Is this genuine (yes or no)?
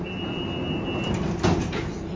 yes